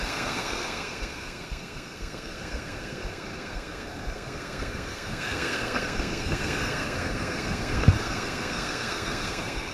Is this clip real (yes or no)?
no